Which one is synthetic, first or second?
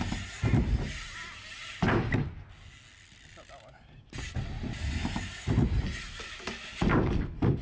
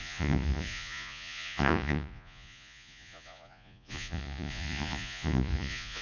second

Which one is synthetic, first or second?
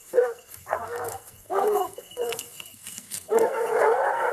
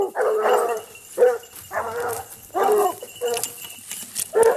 first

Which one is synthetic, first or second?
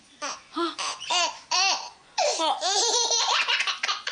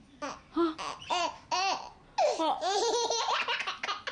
first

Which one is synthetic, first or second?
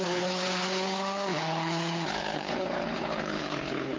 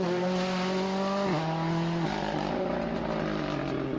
first